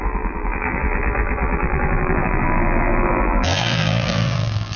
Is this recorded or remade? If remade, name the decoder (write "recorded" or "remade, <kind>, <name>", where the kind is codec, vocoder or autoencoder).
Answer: remade, vocoder, BigVGAN v2